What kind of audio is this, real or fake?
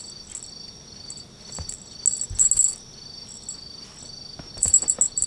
real